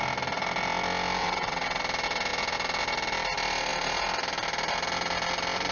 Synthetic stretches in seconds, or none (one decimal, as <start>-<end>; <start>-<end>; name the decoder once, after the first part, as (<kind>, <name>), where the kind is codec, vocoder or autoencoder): 1.2-1.8 (vocoder, WaveNeXt)